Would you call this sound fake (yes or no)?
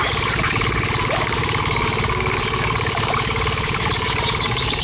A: yes